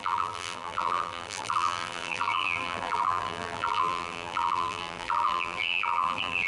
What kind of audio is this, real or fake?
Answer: fake